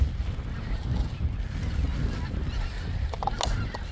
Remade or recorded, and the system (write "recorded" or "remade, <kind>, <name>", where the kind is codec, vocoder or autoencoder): recorded